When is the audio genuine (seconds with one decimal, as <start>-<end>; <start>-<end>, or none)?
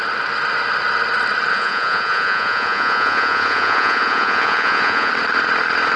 0.0-1.5; 5.1-6.0